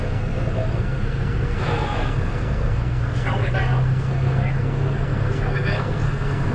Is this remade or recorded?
remade